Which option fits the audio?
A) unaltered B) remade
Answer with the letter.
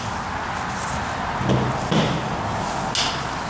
A